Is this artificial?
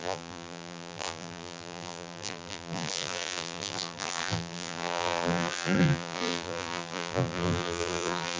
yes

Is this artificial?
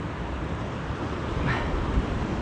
no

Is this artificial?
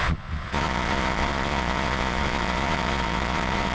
yes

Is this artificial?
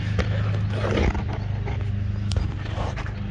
no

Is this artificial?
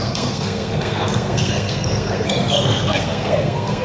yes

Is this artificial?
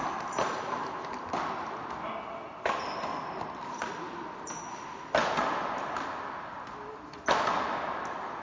no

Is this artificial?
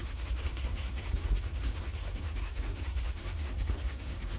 yes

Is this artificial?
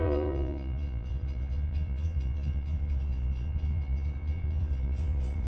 yes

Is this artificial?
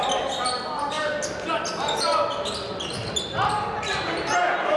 no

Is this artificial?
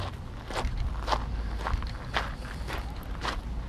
no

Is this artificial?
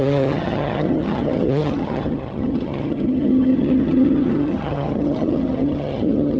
yes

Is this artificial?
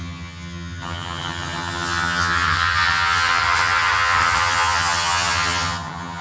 yes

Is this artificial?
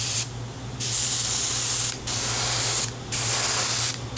no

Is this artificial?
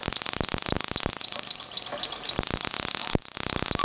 no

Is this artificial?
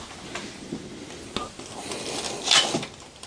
no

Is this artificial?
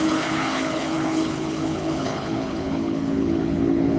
yes